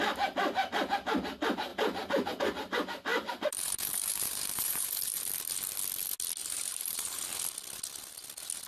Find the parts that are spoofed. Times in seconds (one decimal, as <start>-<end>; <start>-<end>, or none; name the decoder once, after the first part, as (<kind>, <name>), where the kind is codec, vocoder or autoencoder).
1.7-2.4 (vocoder, BigVGAN v2); 3.1-5.2; 6.4-7.2